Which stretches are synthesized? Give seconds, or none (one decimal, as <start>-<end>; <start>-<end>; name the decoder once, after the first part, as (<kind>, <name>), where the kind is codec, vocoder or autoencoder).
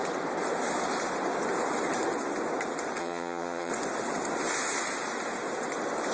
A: 3.0-3.7 (vocoder, HiFi-GAN)